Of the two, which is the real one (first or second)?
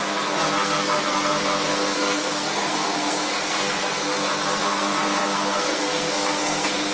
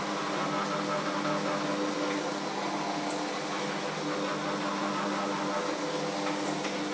second